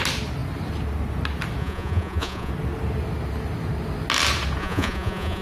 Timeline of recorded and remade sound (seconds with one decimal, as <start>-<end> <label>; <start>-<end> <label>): 0.0-1.6 recorded; 1.6-2.5 remade; 2.5-4.6 recorded; 4.6-5.4 remade